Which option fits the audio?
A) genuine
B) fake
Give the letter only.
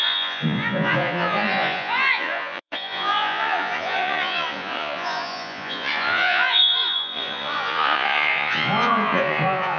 B